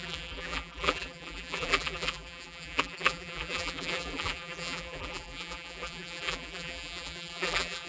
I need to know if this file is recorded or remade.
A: remade